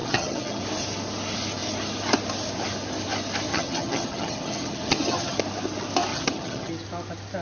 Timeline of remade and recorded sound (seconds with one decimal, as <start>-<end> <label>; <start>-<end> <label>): 0.0-0.6 remade; 0.6-3.5 recorded; 3.5-5.4 remade; 5.4-6.1 recorded; 6.1-6.7 remade; 6.7-7.4 recorded